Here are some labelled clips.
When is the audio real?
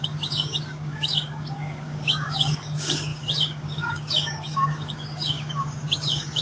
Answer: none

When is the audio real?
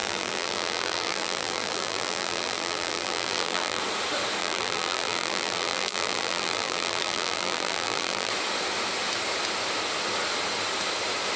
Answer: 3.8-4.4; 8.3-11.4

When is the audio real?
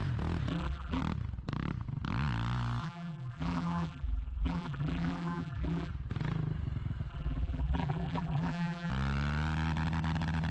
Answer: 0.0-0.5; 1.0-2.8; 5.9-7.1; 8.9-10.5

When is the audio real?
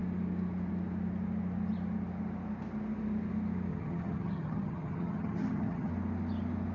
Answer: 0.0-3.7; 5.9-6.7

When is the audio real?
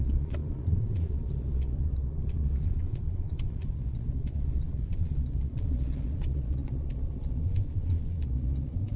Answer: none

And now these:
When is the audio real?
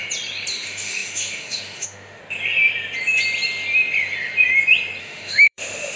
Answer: 0.0-0.5; 2.2-5.0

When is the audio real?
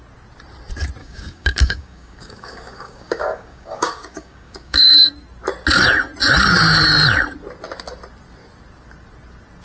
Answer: 0.0-1.0; 4.9-9.6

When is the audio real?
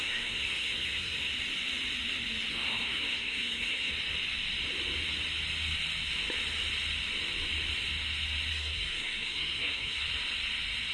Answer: 1.3-2.5; 3.9-8.5; 10.1-10.9